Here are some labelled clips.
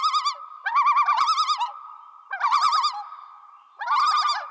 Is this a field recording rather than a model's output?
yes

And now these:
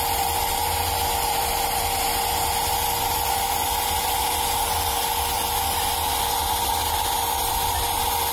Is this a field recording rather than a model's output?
yes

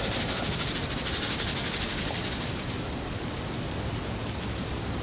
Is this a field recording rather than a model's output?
yes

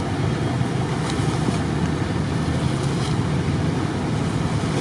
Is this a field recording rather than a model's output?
yes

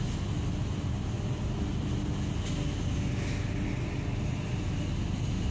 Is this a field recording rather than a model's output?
yes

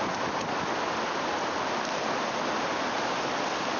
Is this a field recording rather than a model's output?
yes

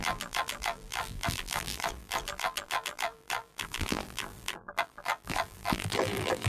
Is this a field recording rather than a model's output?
no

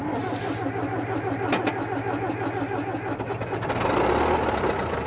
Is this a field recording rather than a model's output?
yes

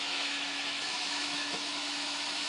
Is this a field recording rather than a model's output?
no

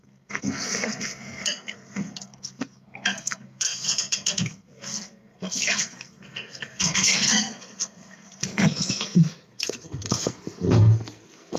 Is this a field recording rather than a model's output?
no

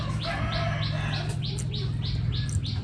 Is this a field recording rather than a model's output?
yes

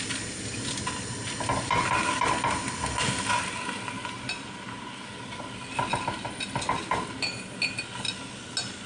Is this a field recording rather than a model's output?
yes